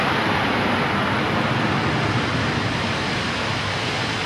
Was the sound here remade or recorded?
recorded